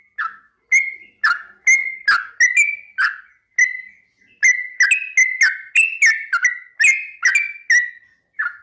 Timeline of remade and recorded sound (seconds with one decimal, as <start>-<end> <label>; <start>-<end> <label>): 0.0-8.6 recorded